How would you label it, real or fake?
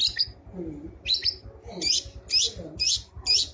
real